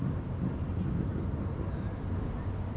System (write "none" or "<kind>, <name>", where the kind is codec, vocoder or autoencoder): none